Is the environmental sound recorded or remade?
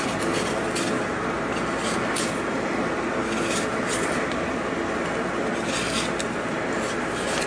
recorded